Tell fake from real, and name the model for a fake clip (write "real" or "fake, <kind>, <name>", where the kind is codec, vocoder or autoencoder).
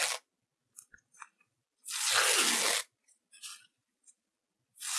real